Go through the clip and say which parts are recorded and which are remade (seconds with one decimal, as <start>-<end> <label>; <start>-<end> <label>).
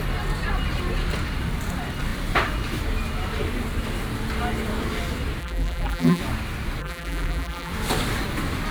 0.0-5.4 recorded; 5.4-6.2 remade; 6.2-6.8 recorded; 6.8-7.7 remade; 7.7-8.7 recorded